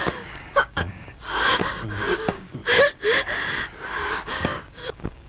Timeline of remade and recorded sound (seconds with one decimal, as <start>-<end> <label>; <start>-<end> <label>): 0.0-2.6 remade; 2.6-4.1 recorded; 4.1-5.3 remade